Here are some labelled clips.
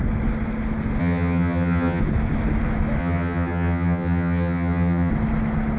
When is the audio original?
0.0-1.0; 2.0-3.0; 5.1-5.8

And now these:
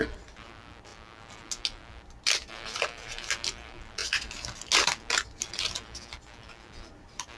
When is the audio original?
0.0-7.4

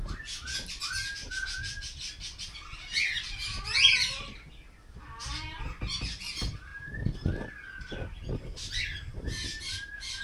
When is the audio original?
0.0-10.2

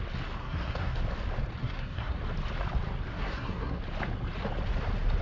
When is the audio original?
0.0-0.4; 1.0-1.6; 2.2-3.1; 3.8-5.2

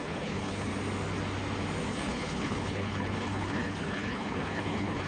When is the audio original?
0.7-1.9

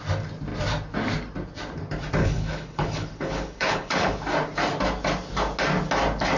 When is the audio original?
0.0-2.2; 4.2-6.4